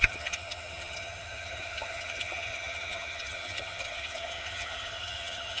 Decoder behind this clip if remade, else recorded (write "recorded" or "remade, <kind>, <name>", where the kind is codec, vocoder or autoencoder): remade, vocoder, HiFi-GAN